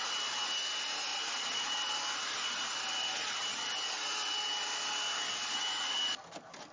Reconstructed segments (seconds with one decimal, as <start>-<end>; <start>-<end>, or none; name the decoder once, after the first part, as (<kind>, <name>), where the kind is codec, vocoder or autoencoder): 1.1-1.9 (vocoder, BigVGAN v2)